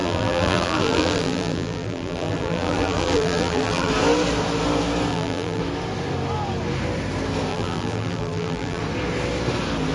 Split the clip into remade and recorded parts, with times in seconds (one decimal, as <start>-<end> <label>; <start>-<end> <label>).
0.0-3.9 remade; 3.9-5.1 recorded; 5.1-5.6 remade; 5.6-7.5 recorded; 7.5-8.8 remade; 8.8-9.9 recorded

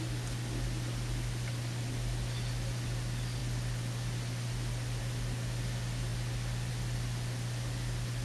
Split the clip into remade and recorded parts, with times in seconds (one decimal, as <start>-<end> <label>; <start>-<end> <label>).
0.0-3.4 remade; 3.4-5.0 recorded; 5.0-6.1 remade; 6.1-6.7 recorded; 6.7-8.2 remade

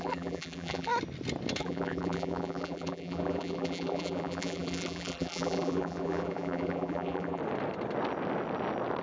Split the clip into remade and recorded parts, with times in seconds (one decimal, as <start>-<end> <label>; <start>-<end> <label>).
0.0-0.9 remade; 0.9-1.6 recorded; 1.6-7.4 remade; 7.4-9.0 recorded